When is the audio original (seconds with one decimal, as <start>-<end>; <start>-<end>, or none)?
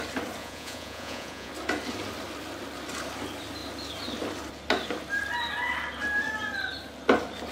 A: 0.0-0.4; 1.5-7.5